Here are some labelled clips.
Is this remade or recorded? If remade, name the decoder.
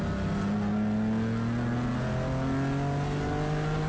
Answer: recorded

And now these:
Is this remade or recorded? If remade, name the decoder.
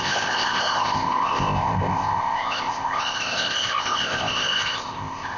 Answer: remade, codec, ZipCodec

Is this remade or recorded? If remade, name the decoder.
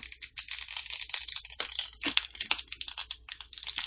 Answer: recorded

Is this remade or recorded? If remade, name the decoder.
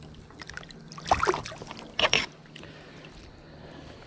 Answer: recorded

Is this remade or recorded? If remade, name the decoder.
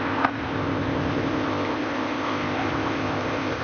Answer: remade, codec, ZipCodec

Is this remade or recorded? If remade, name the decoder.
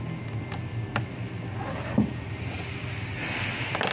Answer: recorded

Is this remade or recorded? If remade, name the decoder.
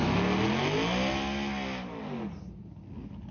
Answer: recorded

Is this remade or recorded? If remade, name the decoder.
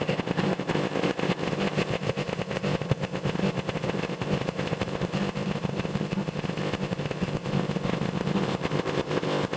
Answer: remade, codec, ZipCodec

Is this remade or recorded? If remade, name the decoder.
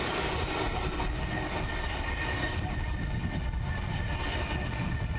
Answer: recorded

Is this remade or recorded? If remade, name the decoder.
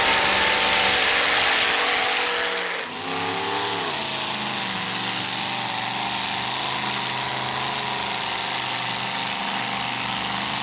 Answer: recorded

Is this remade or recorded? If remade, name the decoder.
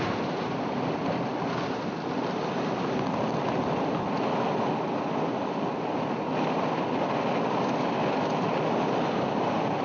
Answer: recorded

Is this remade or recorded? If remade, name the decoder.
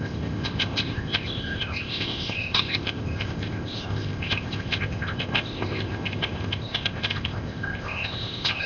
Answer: remade, codec, ZipCodec